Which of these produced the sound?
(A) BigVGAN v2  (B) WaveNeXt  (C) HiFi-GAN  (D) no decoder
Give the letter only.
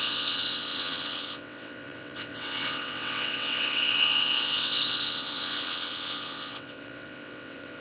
B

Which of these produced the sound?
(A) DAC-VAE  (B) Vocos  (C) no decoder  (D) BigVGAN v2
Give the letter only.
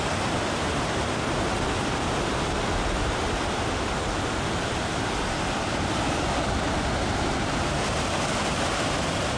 C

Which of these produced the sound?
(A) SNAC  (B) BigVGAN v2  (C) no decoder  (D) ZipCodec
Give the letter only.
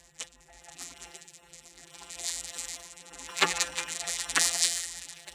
B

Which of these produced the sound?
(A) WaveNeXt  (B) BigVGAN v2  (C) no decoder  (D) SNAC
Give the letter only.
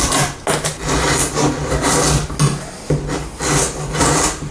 C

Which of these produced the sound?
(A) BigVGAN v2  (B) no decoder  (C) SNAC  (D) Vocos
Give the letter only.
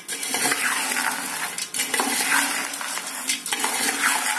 B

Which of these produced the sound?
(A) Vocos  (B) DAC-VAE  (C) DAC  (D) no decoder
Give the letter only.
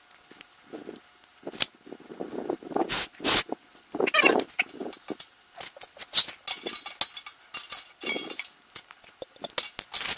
D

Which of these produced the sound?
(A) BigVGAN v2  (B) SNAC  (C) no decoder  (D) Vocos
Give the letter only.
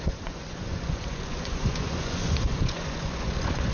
D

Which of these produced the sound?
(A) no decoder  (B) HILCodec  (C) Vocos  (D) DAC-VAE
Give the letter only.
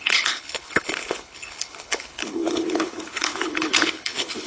B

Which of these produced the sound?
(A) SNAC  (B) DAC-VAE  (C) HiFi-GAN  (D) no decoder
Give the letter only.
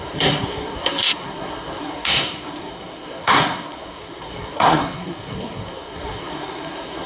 A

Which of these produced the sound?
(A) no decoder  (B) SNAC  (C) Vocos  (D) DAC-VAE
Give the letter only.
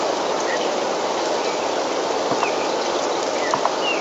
A